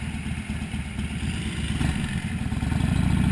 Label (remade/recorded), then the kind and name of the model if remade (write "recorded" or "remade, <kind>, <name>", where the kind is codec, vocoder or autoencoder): recorded